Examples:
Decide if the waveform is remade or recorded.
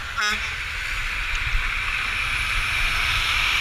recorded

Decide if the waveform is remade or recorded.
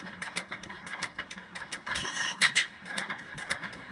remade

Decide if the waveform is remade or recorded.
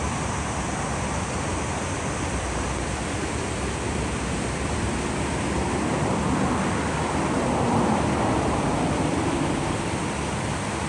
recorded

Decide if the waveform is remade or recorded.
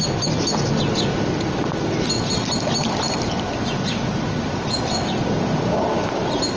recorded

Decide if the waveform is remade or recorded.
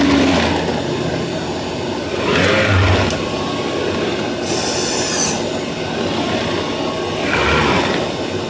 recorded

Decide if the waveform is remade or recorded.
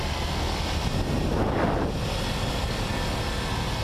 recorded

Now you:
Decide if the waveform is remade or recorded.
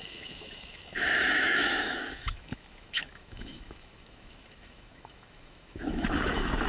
remade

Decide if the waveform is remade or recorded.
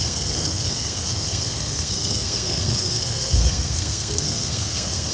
remade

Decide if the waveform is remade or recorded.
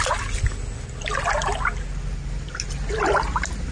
recorded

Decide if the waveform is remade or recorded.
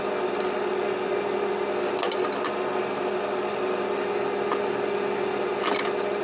recorded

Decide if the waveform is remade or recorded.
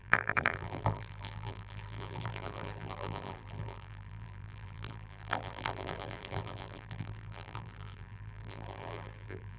remade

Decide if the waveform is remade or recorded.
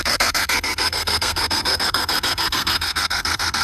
remade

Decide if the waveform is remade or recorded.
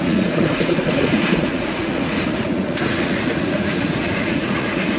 remade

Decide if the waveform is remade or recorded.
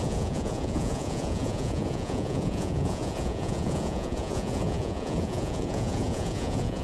remade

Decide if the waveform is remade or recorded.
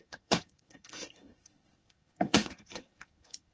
remade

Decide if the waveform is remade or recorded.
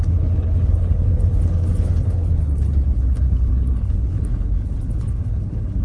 remade